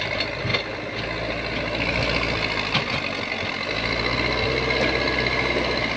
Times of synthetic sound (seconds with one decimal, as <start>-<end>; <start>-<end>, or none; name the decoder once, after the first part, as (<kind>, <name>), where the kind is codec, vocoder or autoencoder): none